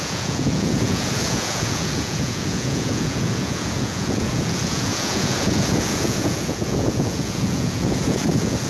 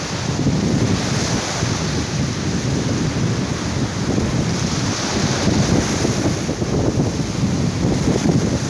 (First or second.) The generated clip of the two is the first